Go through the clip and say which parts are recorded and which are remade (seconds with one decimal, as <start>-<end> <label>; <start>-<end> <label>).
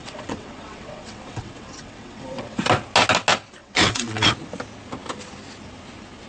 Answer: 0.0-2.6 remade; 2.6-3.6 recorded; 3.6-4.3 remade; 4.3-6.3 recorded